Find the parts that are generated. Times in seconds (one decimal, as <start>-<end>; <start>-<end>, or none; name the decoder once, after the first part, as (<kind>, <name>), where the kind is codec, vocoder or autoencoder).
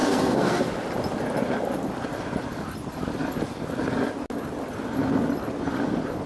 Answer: 0.0-0.7 (codec, SNAC)